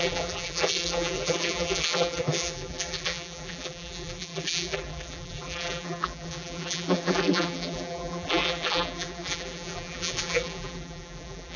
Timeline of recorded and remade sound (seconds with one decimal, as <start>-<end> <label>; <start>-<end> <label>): 0.0-11.6 remade